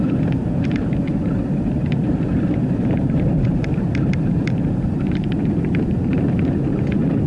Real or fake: fake